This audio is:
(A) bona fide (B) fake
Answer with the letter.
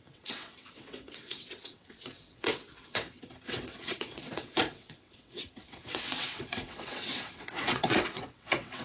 B